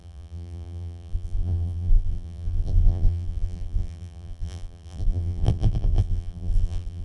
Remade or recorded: remade